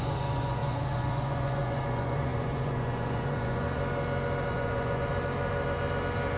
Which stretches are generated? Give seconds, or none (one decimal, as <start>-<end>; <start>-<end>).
0.0-3.8; 4.5-5.1